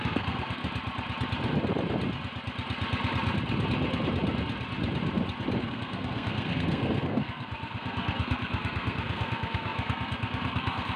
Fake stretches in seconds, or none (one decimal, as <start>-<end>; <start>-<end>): 0.0-0.6; 5.6-11.0